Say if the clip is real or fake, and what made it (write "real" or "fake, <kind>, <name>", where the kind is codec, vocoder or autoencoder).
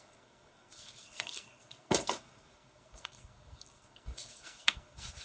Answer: fake, codec, SNAC